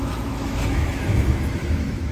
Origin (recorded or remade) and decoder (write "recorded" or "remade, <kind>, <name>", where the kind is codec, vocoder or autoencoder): remade, autoencoder, DAC-VAE